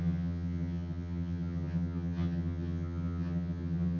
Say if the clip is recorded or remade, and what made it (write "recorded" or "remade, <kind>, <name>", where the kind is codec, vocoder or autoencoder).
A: remade, vocoder, HiFi-GAN